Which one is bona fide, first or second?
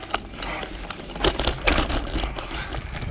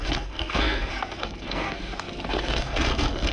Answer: first